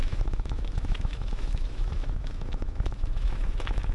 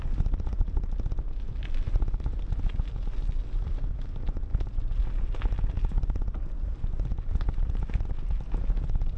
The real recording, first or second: second